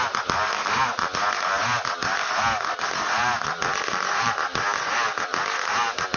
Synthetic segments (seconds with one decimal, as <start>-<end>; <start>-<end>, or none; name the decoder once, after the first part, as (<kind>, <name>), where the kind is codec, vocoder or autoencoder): none